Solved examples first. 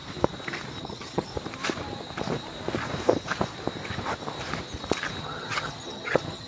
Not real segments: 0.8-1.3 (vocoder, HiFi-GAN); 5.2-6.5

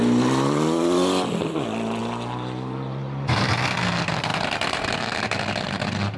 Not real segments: none

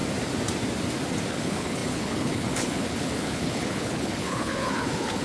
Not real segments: 1.3-5.2 (codec, HILCodec)

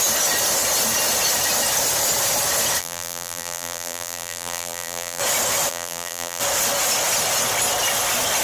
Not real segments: 2.8-5.2 (vocoder, BigVGAN v2); 5.7-6.4

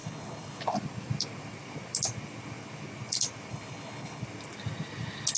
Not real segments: 0.0-0.6 (codec, HILCodec); 3.5-4.2

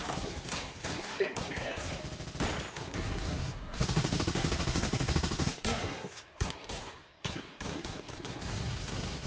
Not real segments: 0.0-2.0 (codec, SNAC); 2.7-9.3

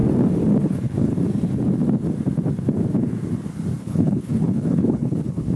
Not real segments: 0.6-1.1 (codec, HILCodec); 3.8-5.6